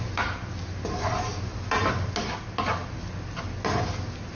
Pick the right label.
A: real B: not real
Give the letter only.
A